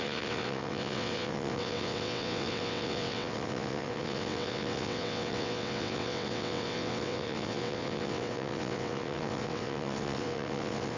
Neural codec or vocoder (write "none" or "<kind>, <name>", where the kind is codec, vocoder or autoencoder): vocoder, WaveNeXt